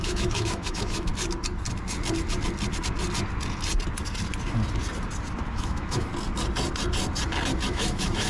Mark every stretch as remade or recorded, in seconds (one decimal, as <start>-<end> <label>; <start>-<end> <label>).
0.0-1.1 remade; 1.1-5.5 recorded; 5.5-6.1 remade; 6.1-7.7 recorded; 7.7-8.3 remade